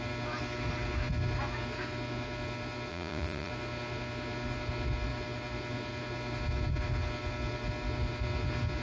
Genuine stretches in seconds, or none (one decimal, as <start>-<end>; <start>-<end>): 0.0-2.9; 3.5-8.8